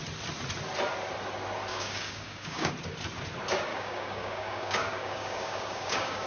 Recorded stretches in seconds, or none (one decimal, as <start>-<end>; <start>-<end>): 0.0-1.7; 2.7-3.7